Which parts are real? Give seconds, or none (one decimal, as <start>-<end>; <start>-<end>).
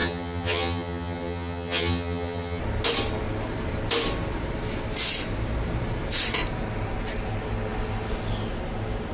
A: 2.6-9.1